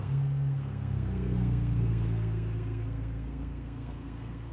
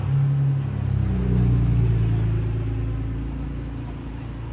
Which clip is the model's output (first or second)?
first